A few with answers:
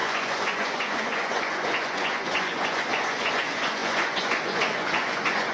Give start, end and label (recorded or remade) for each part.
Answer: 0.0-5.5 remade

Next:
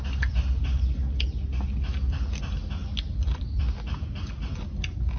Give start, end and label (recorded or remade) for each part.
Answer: 0.0-5.2 recorded

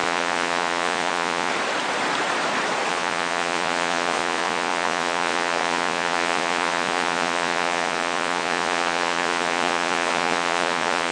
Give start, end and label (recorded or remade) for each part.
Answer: 0.0-1.5 remade; 1.5-2.9 recorded; 2.9-11.1 remade

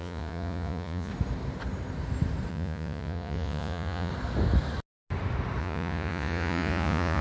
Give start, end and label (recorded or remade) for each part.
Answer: 0.0-1.1 remade; 1.1-2.5 recorded; 2.5-4.1 remade; 4.1-5.6 recorded; 5.6-7.2 remade

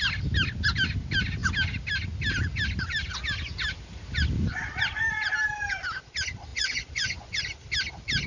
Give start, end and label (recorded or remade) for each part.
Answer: 0.0-6.5 recorded; 6.5-7.4 remade; 7.4-8.3 recorded